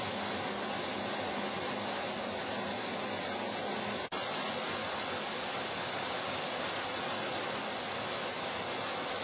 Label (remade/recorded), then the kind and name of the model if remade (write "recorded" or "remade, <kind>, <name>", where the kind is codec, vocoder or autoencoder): recorded